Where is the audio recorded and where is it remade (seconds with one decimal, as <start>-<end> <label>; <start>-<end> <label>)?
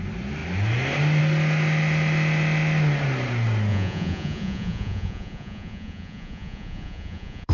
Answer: 0.0-3.7 recorded; 3.7-7.5 remade